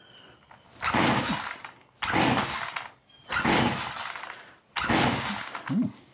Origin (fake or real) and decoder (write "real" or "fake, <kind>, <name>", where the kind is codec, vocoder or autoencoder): real